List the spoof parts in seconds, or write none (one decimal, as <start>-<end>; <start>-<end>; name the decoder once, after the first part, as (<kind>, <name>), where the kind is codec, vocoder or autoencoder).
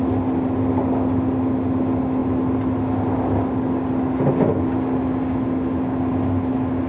none